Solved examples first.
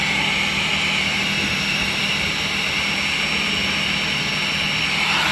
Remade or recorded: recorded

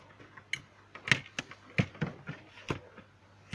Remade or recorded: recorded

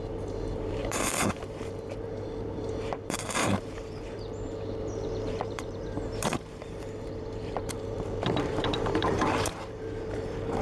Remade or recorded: remade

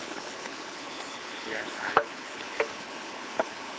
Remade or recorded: remade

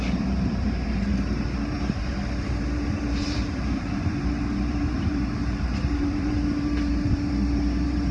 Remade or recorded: remade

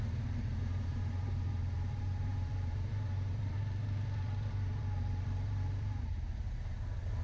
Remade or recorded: remade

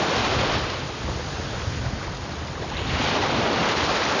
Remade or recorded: recorded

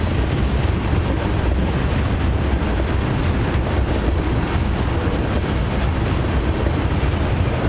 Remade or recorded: recorded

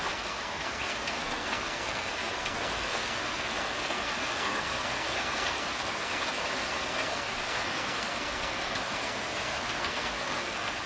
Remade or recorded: remade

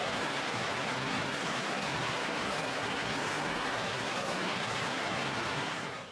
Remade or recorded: remade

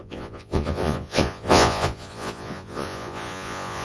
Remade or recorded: remade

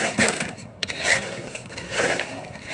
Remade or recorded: remade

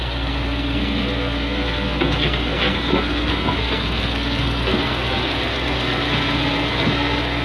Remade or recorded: remade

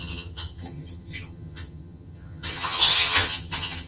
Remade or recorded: remade